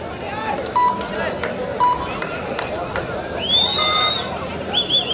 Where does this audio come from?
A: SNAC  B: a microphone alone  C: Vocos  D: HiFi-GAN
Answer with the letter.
B